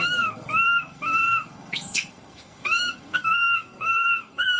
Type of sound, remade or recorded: remade